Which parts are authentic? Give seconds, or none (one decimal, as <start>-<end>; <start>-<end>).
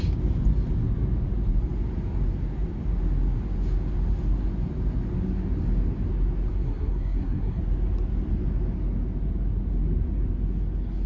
0.0-6.5; 7.6-11.1